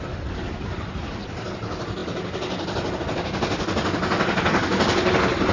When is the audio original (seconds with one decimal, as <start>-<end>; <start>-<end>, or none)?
0.0-5.5